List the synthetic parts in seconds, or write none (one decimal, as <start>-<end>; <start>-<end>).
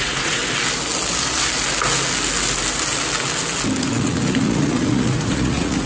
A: 0.0-0.4; 3.8-5.9